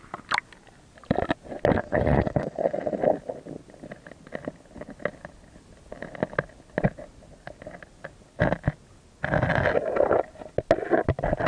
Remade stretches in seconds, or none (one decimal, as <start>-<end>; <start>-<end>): 1.8-3.0